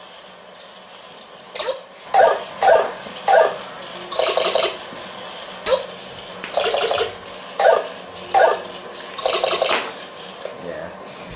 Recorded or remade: recorded